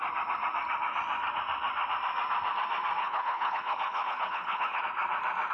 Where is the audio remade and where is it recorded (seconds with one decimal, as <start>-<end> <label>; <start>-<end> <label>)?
0.0-3.0 recorded; 3.0-4.8 remade; 4.8-5.5 recorded